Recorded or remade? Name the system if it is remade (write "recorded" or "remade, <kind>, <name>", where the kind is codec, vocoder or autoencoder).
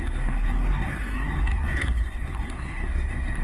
remade, codec, SNAC